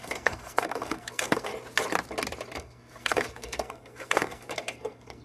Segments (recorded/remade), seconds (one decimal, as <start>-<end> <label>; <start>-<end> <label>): 0.0-1.5 remade; 1.5-2.6 recorded; 2.6-5.2 remade